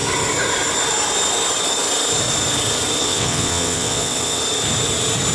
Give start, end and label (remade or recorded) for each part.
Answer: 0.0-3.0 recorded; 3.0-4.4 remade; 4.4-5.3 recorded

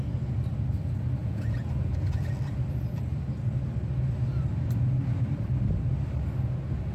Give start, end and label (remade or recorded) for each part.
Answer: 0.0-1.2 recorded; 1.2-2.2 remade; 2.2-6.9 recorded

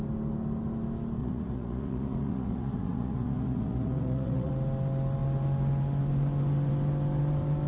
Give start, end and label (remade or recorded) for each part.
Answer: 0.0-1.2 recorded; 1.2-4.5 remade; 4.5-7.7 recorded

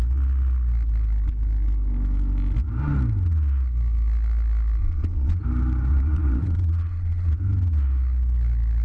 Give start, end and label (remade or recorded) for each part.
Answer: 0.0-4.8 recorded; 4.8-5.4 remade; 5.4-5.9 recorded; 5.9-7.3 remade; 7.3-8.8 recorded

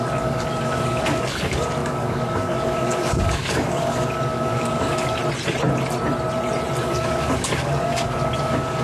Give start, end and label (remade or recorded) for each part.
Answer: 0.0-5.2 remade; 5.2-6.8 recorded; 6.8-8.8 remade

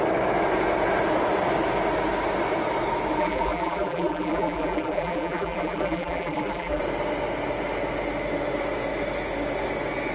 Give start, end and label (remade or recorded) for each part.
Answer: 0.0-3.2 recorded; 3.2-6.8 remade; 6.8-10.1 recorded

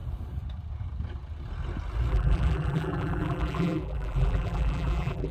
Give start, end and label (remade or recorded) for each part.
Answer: 0.0-2.1 recorded; 2.1-5.3 remade

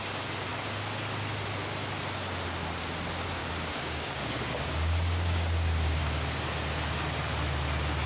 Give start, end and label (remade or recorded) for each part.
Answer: 0.0-3.4 recorded; 3.4-6.0 remade; 6.0-8.1 recorded